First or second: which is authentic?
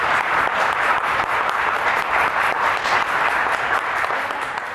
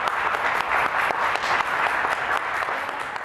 second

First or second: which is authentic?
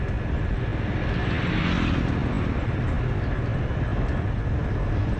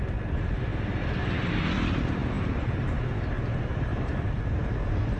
first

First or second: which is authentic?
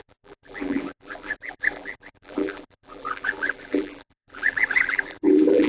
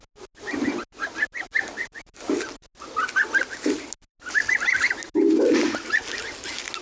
second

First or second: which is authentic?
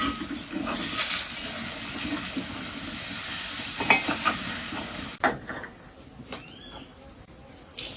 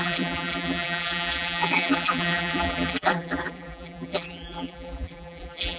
first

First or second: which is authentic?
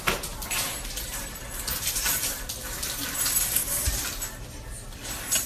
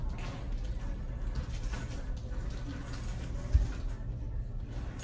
second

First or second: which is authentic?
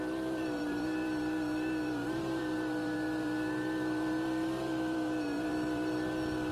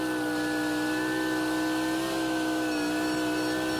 second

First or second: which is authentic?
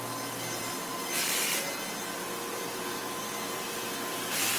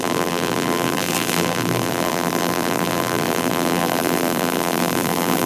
first